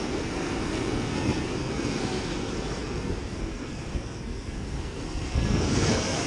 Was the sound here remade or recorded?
remade